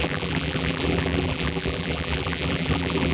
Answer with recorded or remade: remade